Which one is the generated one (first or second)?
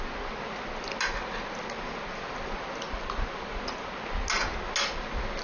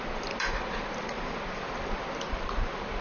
second